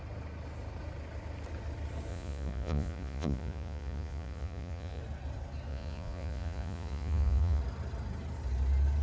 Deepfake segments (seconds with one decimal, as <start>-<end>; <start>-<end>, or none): 2.1-5.0; 5.7-7.6